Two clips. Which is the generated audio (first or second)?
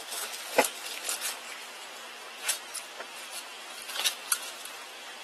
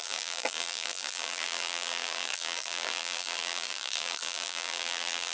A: second